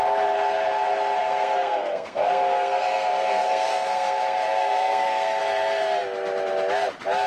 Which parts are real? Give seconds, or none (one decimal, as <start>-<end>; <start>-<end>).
0.0-1.2; 5.4-7.3